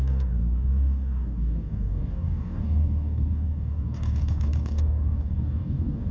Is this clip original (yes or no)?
no